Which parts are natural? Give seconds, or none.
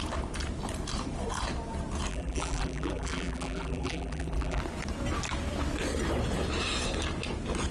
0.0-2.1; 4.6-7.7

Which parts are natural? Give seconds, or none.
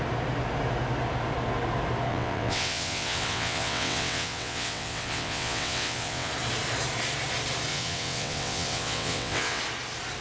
0.0-2.1; 6.3-7.7; 9.6-10.2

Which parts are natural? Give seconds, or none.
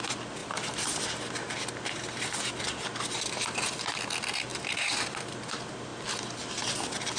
0.0-0.4; 1.0-4.5; 5.2-7.2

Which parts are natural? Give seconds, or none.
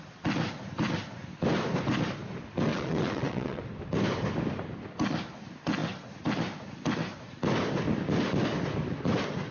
0.0-2.7; 3.6-9.5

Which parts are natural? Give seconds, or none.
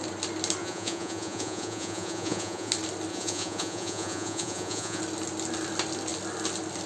0.0-0.6; 2.7-3.1; 5.0-6.9